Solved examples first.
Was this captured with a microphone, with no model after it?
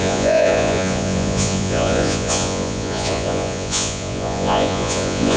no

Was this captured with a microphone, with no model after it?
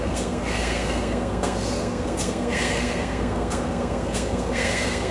no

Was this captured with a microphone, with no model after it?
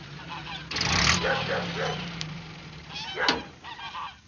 yes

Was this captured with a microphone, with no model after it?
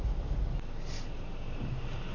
yes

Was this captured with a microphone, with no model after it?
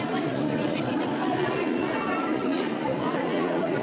no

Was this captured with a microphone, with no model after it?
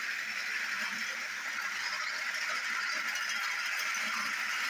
yes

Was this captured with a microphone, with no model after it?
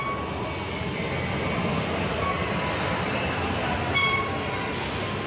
yes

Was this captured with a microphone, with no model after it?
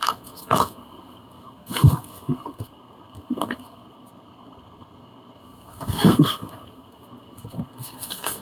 no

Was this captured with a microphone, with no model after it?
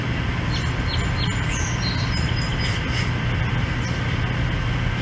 yes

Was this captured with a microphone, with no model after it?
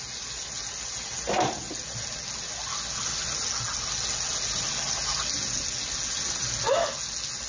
yes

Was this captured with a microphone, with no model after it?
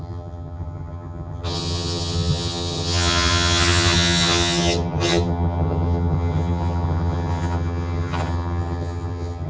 no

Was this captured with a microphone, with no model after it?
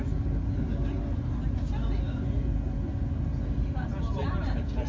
yes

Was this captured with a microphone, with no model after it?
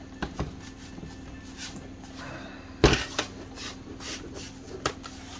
yes